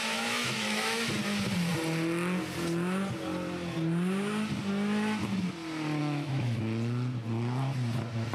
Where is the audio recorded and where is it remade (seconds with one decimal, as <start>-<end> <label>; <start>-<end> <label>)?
0.0-1.1 remade; 1.1-6.0 recorded; 6.0-6.6 remade; 6.6-8.3 recorded